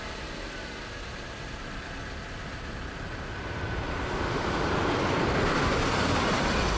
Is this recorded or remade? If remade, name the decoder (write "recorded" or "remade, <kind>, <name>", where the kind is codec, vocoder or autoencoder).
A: recorded